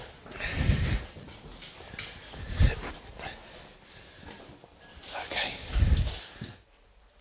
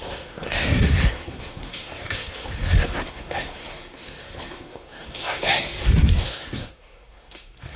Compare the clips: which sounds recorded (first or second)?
first